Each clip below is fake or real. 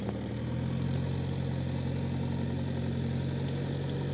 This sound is real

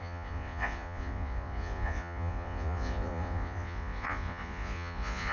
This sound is fake